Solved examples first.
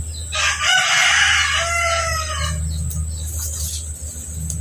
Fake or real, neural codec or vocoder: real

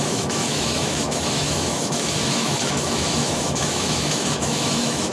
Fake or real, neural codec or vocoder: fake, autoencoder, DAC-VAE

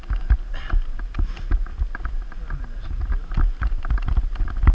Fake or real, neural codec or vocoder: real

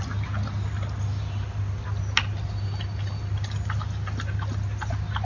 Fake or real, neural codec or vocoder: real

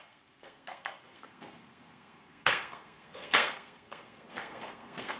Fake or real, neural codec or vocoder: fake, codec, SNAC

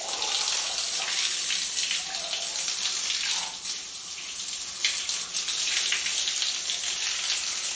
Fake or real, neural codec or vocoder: real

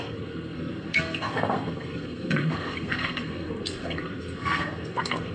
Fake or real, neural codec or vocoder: fake, codec, SNAC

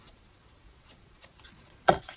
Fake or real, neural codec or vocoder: fake, vocoder, Vocos